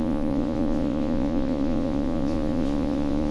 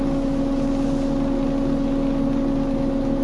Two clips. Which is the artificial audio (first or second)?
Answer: first